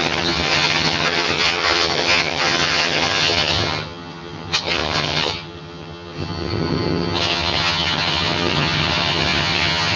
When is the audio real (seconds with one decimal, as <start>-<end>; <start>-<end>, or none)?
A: none